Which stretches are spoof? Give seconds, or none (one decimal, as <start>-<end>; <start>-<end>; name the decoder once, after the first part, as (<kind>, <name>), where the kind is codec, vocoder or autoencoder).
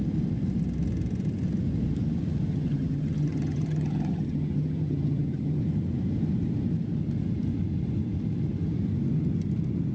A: 2.5-5.6 (vocoder, HiFi-GAN)